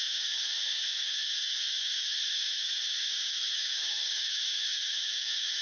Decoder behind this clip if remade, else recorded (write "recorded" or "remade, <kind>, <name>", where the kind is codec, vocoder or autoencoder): remade, autoencoder, DAC-VAE